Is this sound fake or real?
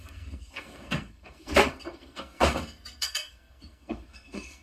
fake